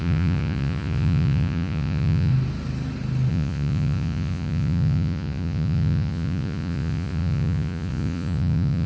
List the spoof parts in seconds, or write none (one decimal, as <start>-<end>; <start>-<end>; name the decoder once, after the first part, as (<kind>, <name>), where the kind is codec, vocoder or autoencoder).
0.0-2.3 (vocoder, Vocos); 3.3-8.9